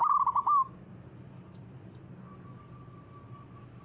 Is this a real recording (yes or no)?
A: yes